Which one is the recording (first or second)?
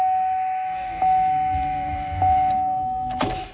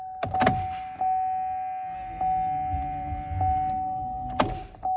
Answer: second